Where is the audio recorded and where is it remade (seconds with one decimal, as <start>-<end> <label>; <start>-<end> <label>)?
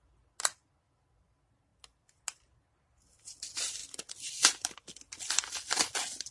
0.0-6.3 recorded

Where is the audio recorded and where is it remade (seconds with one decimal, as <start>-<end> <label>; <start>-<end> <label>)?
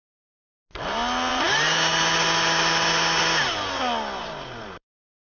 0.0-1.3 recorded; 1.3-1.9 remade; 1.9-4.2 recorded; 4.2-5.3 remade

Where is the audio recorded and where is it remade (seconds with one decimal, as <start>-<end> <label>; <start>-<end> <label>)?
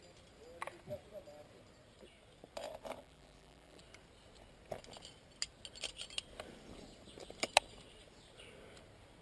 0.0-3.0 recorded; 3.0-3.8 remade; 3.8-9.2 recorded